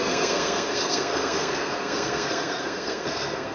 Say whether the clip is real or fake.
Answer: fake